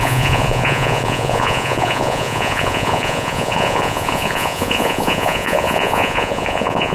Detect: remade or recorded remade